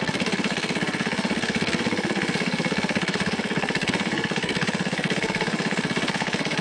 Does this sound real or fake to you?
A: fake